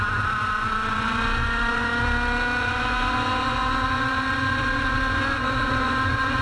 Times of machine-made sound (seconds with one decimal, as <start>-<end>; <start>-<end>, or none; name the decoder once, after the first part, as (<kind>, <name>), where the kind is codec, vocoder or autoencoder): 0.0-1.9 (vocoder, Vocos); 2.6-6.4